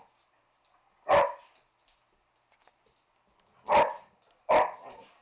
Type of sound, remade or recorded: recorded